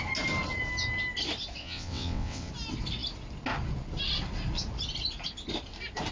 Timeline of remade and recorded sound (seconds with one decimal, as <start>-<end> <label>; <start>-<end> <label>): 0.0-1.6 recorded; 1.6-2.5 remade; 2.5-6.1 recorded